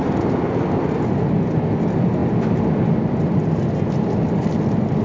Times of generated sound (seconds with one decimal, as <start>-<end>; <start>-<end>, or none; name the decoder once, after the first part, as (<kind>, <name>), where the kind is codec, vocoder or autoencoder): none